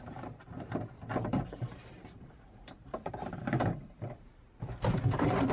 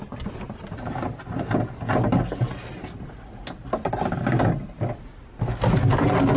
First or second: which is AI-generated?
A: first